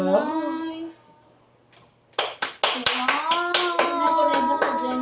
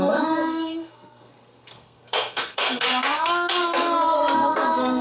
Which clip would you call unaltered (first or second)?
first